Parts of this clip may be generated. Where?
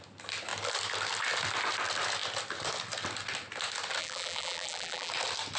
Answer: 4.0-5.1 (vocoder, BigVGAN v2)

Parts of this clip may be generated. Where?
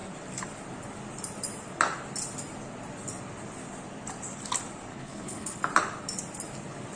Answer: 4.9-5.6 (codec, HILCodec)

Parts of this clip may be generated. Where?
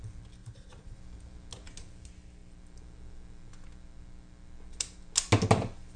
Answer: 0.4-1.0 (vocoder, Vocos)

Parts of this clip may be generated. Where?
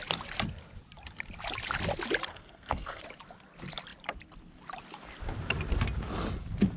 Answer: 2.3-3.0 (codec, SNAC)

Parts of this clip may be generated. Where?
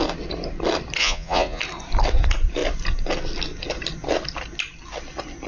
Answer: 1.0-1.6 (vocoder, Vocos)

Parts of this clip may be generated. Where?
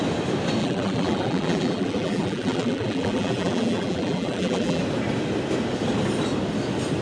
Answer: 0.6-4.8 (vocoder, BigVGAN v2)